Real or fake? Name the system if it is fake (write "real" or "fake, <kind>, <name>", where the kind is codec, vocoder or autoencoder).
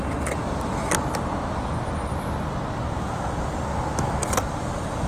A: real